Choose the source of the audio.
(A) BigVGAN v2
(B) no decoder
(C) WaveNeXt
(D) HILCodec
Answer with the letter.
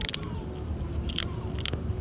B